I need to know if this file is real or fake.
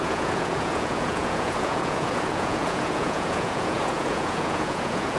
fake